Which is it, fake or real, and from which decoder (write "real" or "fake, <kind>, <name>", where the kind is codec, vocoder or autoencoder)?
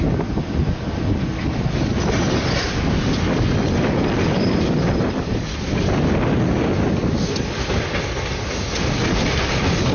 real